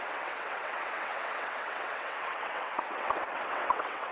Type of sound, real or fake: fake